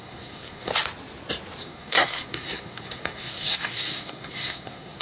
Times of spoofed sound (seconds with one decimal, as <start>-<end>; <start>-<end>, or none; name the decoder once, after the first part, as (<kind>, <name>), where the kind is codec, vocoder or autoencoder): 0.0-0.7 (codec, SNAC); 1.6-5.0